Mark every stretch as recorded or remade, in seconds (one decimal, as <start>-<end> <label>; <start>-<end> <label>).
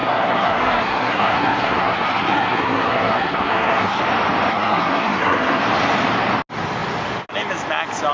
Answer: 0.0-4.0 remade; 4.0-4.5 recorded; 4.5-5.6 remade; 5.6-8.1 recorded